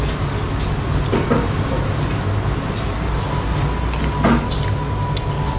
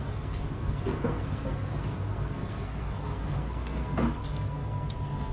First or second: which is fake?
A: second